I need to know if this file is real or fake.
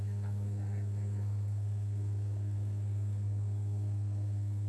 fake